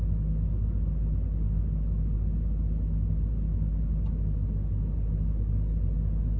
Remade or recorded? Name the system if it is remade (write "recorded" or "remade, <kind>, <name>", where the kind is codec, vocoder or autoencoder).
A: recorded